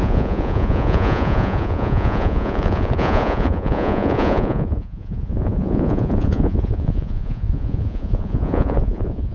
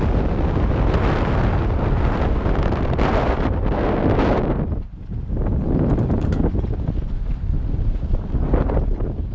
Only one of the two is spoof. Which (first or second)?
first